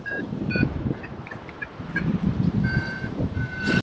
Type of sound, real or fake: fake